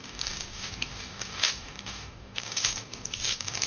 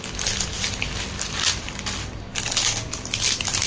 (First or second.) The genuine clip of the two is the second